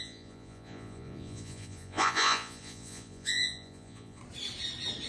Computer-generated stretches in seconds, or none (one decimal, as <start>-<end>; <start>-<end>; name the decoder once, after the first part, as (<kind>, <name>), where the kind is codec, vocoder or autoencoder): 0.0-4.2 (vocoder, Vocos)